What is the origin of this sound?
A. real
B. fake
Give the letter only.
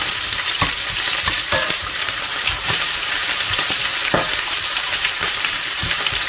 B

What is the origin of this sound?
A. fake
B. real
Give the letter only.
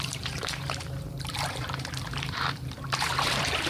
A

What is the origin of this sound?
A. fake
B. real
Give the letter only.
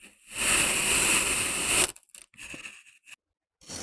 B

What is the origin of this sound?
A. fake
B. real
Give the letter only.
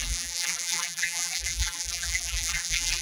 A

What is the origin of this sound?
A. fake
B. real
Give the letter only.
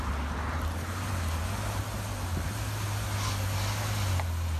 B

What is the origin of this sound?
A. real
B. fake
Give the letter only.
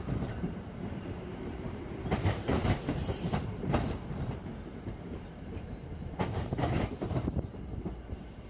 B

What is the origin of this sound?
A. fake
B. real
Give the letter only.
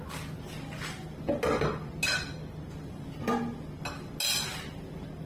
B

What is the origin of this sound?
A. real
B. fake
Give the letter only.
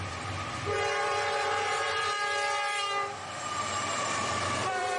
B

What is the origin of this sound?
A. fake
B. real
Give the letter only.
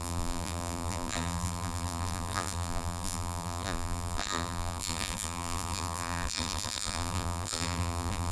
A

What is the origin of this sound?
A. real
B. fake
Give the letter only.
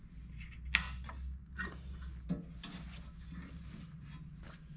A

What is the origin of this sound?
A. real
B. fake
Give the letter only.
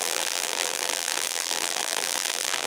B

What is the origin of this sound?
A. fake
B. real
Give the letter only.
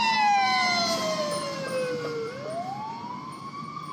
B